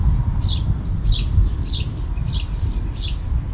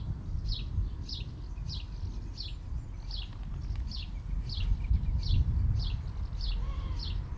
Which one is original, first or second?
second